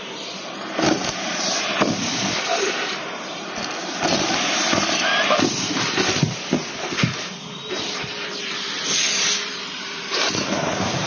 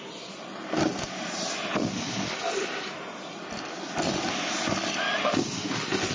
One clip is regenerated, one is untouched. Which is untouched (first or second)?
second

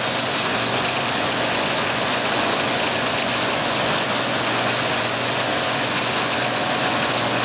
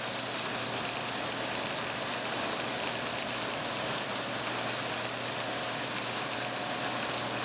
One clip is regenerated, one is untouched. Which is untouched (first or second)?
second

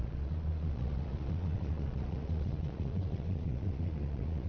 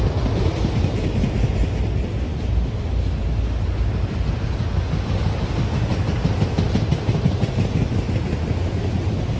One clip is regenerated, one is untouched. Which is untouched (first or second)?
second